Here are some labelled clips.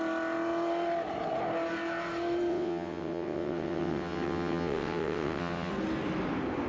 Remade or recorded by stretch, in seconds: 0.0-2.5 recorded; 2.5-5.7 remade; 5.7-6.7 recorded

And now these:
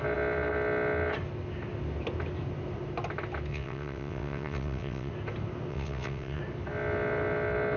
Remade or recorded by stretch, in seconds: 0.0-3.5 recorded; 3.5-5.1 remade; 5.1-5.7 recorded; 5.7-6.4 remade; 6.4-7.8 recorded

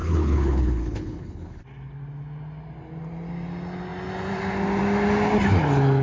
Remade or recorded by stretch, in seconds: 0.0-1.6 remade; 1.6-6.0 recorded

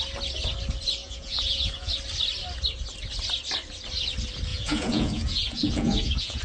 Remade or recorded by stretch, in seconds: 0.0-1.0 recorded; 1.0-1.9 remade; 1.9-4.5 recorded; 4.5-6.4 remade